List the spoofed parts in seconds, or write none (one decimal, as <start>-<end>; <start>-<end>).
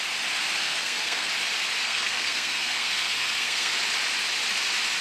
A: 0.6-1.3; 1.8-3.7